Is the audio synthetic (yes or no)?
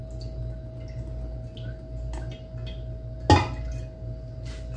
no